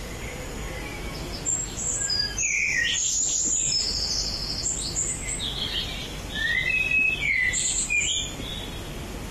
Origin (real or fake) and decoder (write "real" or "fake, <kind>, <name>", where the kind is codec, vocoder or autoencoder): fake, vocoder, BigVGAN v2